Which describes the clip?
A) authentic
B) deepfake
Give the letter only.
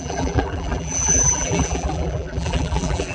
B